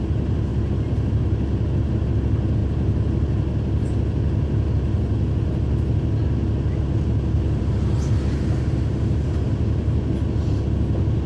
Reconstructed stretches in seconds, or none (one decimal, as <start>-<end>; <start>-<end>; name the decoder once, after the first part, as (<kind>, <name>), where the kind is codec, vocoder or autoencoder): none